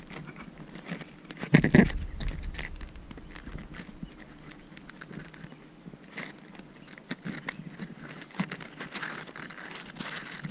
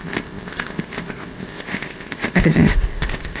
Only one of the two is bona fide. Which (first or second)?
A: first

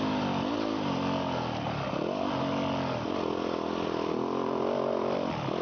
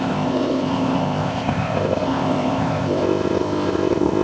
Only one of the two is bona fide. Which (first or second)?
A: first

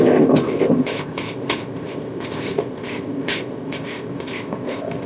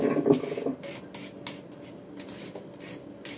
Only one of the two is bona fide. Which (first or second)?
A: second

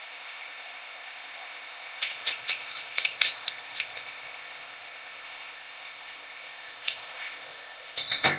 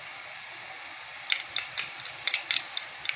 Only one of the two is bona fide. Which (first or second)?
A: second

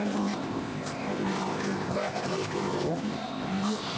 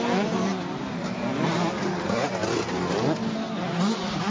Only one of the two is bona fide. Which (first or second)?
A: second